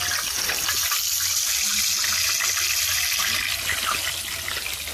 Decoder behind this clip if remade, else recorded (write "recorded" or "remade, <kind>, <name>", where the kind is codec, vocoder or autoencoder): recorded